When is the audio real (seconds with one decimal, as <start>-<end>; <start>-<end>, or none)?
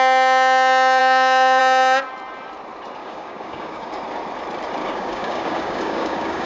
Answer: 0.0-1.0; 1.6-3.0; 3.9-4.8